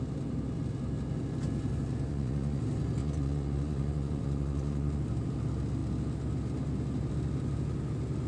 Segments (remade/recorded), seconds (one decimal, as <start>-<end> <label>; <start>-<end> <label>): 0.0-2.1 recorded; 2.1-2.6 remade; 2.6-3.0 recorded; 3.0-5.0 remade; 5.0-8.3 recorded